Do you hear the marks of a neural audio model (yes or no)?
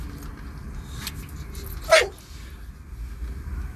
no